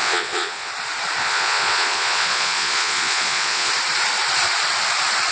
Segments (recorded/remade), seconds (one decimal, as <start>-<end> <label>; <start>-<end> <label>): 0.0-0.7 remade; 0.7-1.2 recorded; 1.2-3.7 remade; 3.7-5.3 recorded